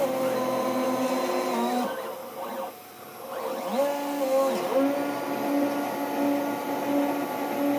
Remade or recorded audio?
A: recorded